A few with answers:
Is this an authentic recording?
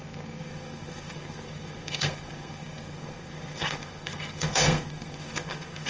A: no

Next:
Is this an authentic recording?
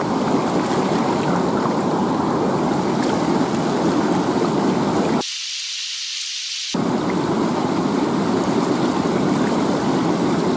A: yes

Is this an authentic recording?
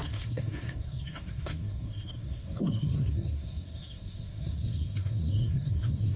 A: no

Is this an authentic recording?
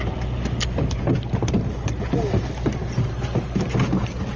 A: yes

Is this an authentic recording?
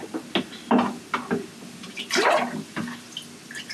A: yes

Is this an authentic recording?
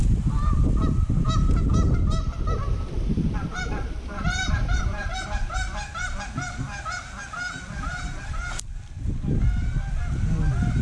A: yes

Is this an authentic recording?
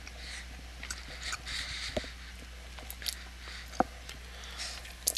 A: yes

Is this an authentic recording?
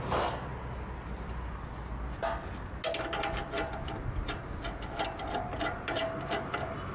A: yes